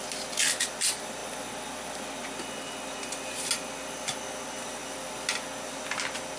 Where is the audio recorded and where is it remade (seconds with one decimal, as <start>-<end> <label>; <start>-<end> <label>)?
0.0-6.4 recorded